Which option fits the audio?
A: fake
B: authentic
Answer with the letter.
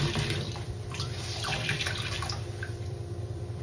A